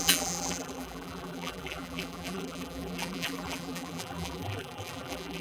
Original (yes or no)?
no